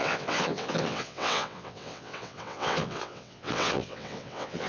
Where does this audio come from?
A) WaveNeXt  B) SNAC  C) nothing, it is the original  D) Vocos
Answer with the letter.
A